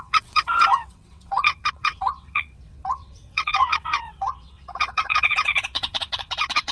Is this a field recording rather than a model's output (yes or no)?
no